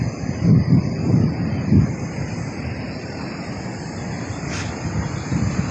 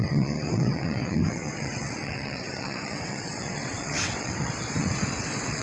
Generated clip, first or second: second